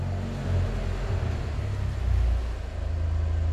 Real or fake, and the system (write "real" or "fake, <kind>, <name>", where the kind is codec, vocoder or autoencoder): real